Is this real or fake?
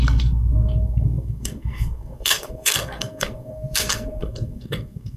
fake